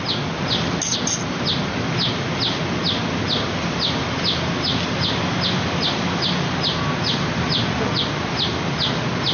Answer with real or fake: real